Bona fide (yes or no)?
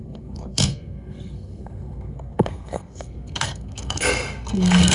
no